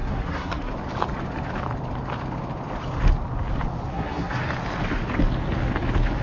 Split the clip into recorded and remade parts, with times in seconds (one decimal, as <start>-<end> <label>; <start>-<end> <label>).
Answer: 0.0-0.7 remade; 0.7-3.9 recorded; 3.9-4.4 remade; 4.4-6.2 recorded